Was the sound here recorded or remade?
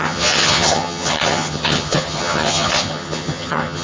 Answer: remade